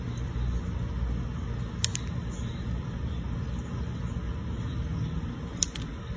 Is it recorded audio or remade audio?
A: recorded